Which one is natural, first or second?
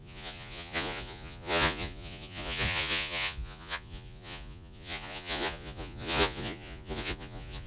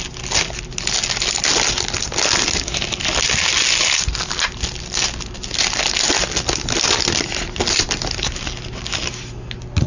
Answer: second